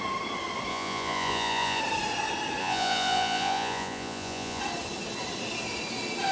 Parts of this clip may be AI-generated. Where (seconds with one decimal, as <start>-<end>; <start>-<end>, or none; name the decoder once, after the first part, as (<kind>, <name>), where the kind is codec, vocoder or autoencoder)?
0.7-1.8 (vocoder, Vocos); 2.6-4.6